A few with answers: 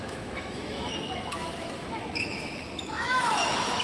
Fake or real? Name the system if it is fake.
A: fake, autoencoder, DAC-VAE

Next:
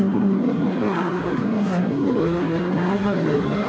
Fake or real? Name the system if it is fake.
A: fake, codec, SNAC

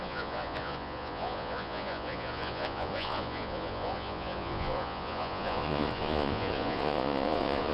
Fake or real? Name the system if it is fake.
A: fake, vocoder, Vocos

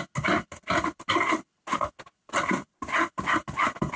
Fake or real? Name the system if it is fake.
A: real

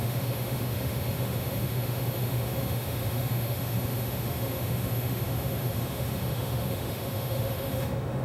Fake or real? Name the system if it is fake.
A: fake, autoencoder, DAC-VAE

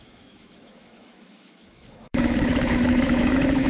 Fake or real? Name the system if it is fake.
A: fake, autoencoder, DAC-VAE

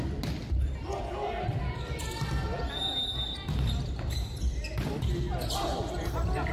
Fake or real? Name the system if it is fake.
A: real